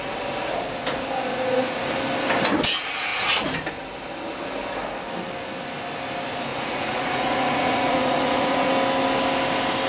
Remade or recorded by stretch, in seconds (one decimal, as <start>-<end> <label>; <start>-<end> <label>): 0.0-1.3 recorded; 1.3-1.9 remade; 1.9-6.5 recorded; 6.5-8.7 remade; 8.7-9.9 recorded